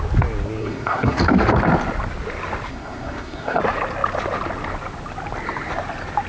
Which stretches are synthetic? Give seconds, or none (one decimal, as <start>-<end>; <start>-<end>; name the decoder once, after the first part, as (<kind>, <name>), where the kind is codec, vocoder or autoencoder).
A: 0.6-1.2 (codec, SNAC); 2.7-3.6